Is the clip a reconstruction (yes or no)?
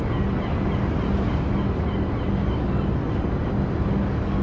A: no